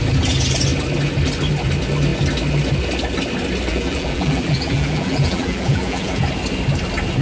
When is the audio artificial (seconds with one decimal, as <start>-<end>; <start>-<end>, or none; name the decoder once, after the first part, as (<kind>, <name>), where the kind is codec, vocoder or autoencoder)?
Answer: 3.7-6.2 (vocoder, BigVGAN v2)